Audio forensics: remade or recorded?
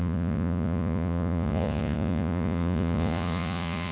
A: remade